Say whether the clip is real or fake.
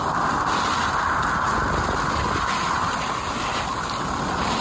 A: real